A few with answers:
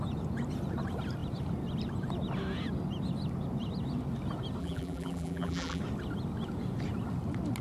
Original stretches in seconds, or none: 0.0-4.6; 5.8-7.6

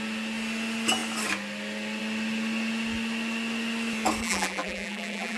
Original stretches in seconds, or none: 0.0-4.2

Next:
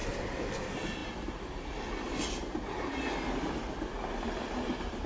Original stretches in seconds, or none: 0.6-5.1

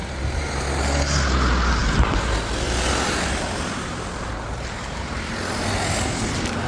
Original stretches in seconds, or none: 0.8-1.8; 5.0-6.7

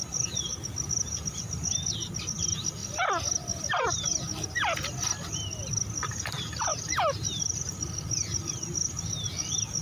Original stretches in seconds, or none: 2.8-4.9; 6.7-7.4

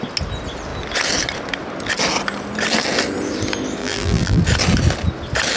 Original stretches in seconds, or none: 0.0-3.8; 4.4-5.6